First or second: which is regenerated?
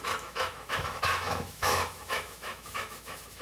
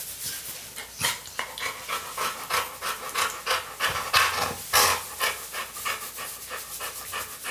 first